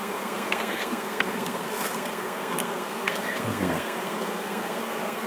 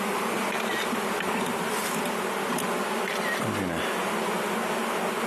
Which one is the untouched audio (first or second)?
second